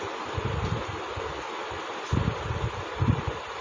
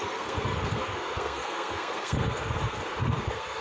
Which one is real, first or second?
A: first